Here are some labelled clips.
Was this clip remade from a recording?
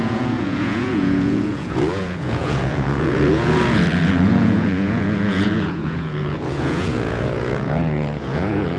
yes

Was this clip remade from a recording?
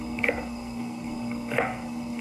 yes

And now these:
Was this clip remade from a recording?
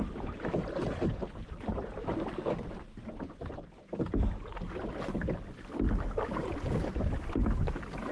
no